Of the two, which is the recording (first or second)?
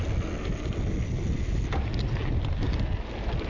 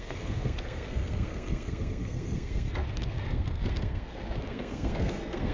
first